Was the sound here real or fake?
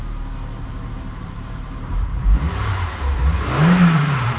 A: fake